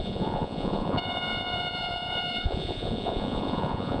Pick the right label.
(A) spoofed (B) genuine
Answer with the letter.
A